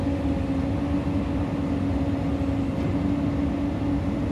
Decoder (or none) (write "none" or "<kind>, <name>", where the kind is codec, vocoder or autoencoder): none